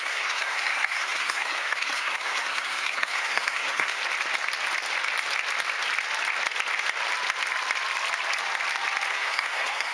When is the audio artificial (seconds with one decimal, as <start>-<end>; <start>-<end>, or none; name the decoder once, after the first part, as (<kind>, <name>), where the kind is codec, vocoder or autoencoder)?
0.0-4.0 (codec, SNAC); 9.1-9.9